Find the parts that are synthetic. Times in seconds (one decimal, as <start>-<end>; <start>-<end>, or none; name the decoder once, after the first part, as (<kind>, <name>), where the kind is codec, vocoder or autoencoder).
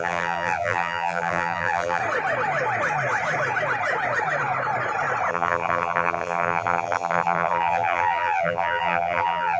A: 0.0-2.0 (vocoder, BigVGAN v2); 5.3-9.6